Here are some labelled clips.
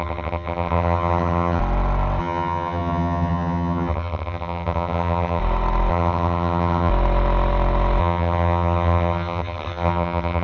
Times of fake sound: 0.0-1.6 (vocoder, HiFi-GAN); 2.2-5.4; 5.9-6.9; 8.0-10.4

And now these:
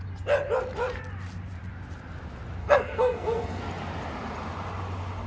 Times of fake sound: 2.6-3.6 (codec, SNAC)

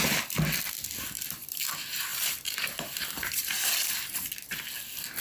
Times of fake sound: 2.1-3.9 (vocoder, BigVGAN v2)